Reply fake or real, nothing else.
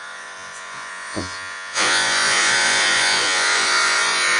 fake